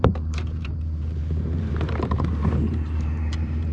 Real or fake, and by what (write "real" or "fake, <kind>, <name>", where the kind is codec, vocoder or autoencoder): fake, vocoder, BigVGAN v2